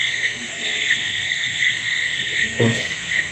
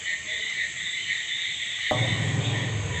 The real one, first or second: second